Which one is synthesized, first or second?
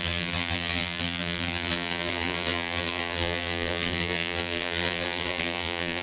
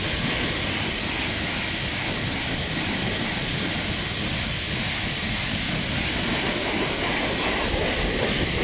first